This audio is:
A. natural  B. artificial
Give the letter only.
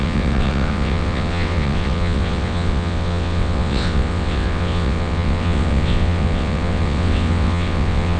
B